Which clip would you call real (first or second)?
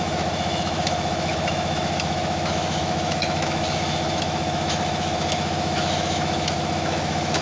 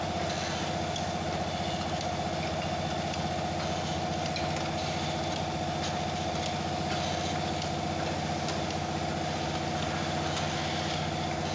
second